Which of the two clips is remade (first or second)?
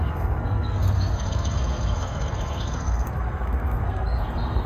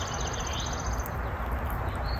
first